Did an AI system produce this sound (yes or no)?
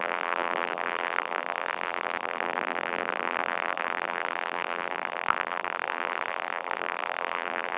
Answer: yes